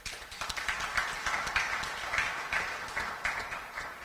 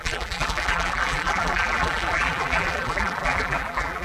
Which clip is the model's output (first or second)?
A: second